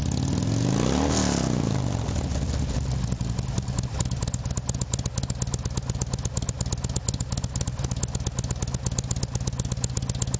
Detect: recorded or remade recorded